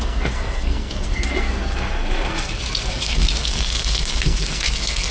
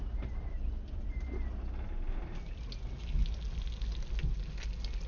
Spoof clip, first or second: first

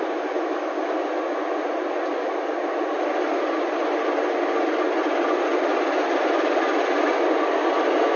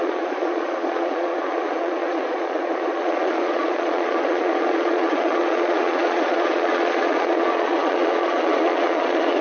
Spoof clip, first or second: second